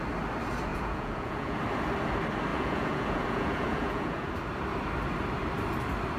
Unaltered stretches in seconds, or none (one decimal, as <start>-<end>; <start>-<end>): 0.0-0.7; 1.6-2.5; 4.3-6.2